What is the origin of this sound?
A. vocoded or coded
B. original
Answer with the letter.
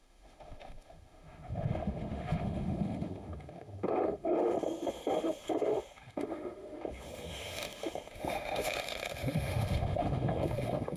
A